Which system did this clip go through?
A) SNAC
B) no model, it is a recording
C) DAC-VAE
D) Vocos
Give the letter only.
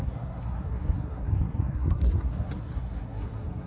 A